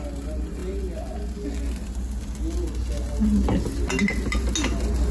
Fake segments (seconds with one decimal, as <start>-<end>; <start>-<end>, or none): none